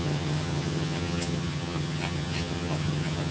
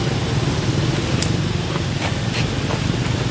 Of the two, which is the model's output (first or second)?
first